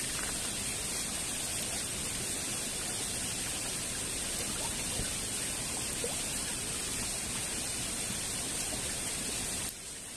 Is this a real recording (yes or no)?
yes